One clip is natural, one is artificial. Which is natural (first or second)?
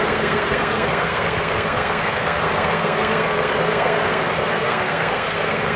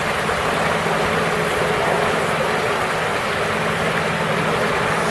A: second